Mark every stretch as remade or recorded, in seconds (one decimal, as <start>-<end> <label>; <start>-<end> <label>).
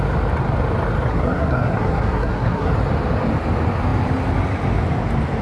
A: 0.0-1.1 recorded; 1.1-2.7 remade; 2.7-5.4 recorded